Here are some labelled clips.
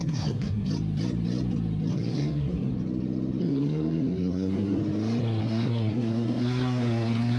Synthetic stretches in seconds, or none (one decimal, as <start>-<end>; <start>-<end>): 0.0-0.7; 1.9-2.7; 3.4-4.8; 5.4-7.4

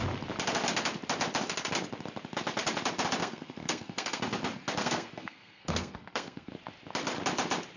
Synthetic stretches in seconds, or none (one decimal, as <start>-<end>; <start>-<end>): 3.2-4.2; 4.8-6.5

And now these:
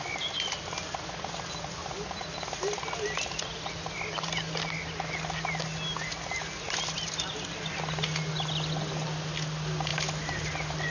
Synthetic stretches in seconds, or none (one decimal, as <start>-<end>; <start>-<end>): none

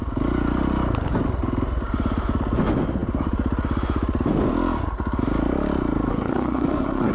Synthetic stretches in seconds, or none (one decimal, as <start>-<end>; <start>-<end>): 6.1-7.1

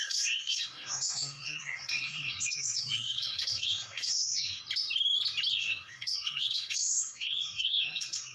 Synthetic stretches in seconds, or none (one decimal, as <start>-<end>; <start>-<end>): 0.0-4.6; 5.5-8.3